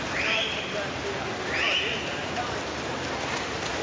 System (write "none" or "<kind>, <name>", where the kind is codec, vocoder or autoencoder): none